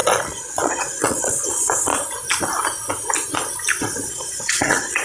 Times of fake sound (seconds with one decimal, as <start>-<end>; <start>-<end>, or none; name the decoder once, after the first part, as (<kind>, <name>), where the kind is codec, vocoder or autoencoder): 0.0-1.9 (vocoder, Vocos); 4.1-5.0